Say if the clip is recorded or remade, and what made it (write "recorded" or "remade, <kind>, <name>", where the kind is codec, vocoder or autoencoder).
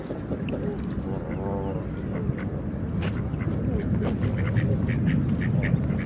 recorded